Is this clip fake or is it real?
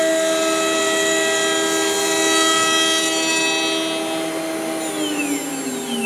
real